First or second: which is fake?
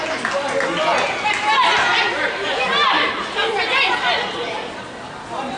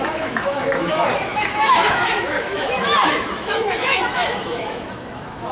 second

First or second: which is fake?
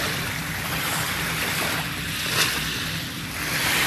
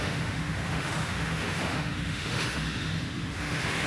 second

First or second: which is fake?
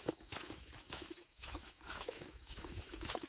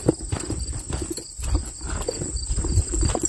first